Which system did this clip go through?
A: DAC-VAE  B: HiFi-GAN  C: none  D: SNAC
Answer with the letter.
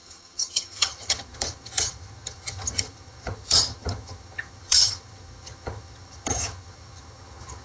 B